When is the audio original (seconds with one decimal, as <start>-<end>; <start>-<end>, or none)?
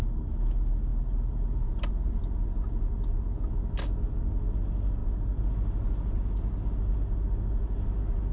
0.0-8.3